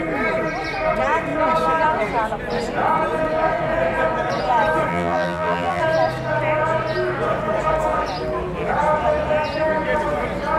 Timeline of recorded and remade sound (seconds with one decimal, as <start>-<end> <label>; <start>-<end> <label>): 0.0-4.9 recorded; 4.9-5.8 remade; 5.8-10.6 recorded